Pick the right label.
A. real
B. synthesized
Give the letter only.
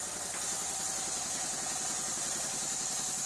A